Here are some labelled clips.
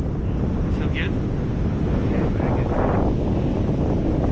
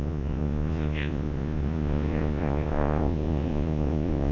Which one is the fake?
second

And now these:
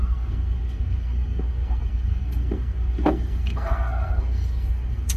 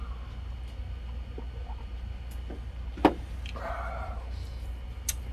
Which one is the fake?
first